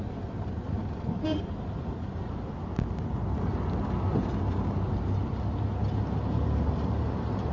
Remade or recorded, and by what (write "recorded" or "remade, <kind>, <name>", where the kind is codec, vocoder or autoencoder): recorded